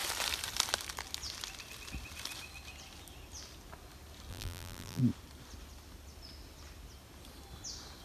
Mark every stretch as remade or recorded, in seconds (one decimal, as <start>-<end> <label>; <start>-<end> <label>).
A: 0.0-4.3 recorded; 4.3-5.0 remade; 5.0-8.0 recorded